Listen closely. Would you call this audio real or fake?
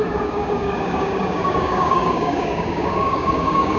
fake